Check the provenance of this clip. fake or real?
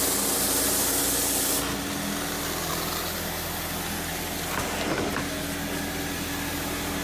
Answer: real